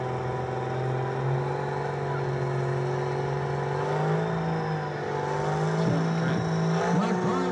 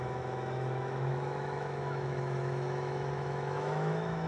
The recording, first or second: first